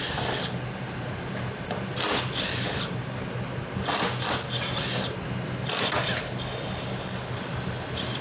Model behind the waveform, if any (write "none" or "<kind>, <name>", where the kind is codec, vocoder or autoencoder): none